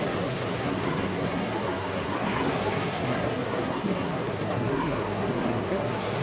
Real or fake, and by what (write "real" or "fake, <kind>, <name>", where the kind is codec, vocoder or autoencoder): fake, codec, SNAC